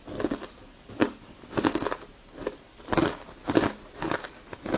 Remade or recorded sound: recorded